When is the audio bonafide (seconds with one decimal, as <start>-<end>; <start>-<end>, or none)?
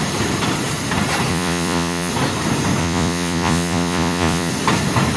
0.0-1.3; 2.1-2.8; 4.5-5.2